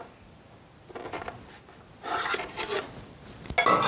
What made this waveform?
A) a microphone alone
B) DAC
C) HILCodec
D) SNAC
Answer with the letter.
A